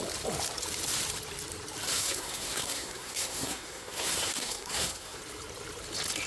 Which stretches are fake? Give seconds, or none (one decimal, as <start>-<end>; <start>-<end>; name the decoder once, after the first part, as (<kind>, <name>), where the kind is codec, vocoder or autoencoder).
1.9-5.2 (codec, SNAC)